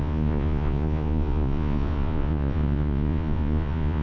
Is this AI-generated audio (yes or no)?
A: yes